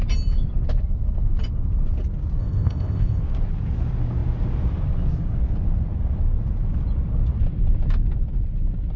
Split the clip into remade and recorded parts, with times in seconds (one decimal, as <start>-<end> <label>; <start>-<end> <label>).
0.0-2.4 recorded; 2.4-3.2 remade; 3.2-9.0 recorded